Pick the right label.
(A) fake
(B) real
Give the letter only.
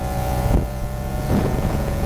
A